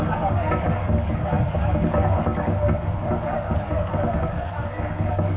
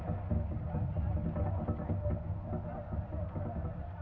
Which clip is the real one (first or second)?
second